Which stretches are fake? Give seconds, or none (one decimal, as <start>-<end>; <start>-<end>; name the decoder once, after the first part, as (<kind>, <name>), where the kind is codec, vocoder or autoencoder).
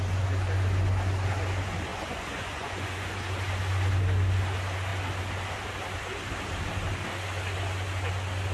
1.9-3.1 (vocoder, Vocos)